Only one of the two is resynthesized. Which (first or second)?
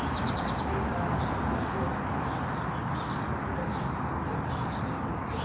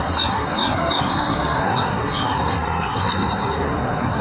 second